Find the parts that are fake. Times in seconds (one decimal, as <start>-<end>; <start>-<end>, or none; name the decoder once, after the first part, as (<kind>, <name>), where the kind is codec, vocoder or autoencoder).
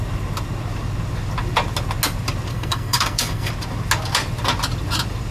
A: 2.5-3.5 (codec, SNAC)